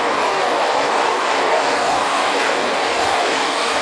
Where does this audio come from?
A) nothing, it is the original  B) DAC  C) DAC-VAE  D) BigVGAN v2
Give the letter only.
B